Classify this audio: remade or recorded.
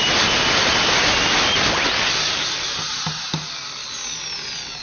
recorded